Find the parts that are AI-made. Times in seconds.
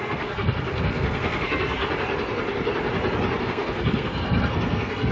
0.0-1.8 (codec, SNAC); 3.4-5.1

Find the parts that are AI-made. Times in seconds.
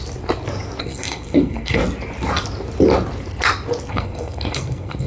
0.8-1.8 (codec, SNAC); 3.9-5.1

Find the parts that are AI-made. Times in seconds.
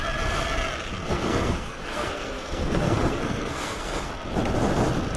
1.0-4.1 (codec, SNAC)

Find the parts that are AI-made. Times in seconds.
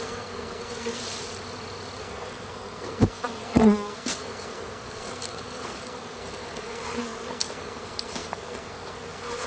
0.0-1.0 (codec, SNAC); 2.0-9.5